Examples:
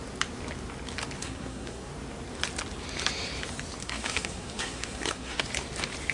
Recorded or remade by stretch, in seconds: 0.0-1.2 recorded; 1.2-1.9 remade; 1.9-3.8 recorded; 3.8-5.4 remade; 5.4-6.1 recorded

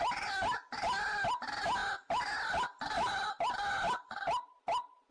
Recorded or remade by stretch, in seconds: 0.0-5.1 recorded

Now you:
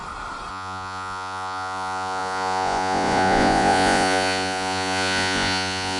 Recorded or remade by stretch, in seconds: 0.0-0.5 recorded; 0.5-6.0 remade

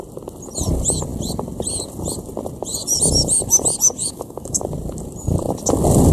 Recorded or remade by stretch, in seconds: 0.0-4.0 recorded; 4.0-4.6 remade; 4.6-6.1 recorded

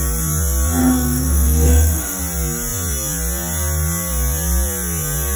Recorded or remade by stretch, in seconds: 0.0-0.8 recorded; 0.8-2.2 remade; 2.2-5.4 recorded